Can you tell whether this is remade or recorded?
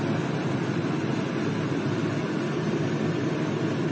recorded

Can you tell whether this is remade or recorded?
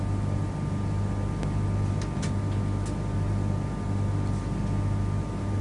recorded